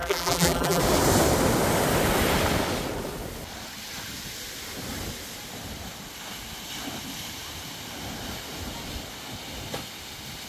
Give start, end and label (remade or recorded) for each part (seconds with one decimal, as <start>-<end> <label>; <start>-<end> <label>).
0.0-0.8 remade; 0.8-10.5 recorded